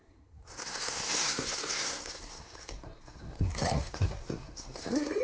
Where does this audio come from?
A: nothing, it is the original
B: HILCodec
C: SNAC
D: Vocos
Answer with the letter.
C